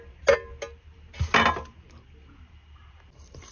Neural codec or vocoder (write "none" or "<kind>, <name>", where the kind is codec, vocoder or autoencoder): none